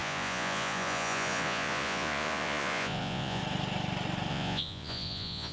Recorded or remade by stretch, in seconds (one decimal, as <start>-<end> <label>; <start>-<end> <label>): 0.0-3.4 remade; 3.4-4.3 recorded; 4.3-5.5 remade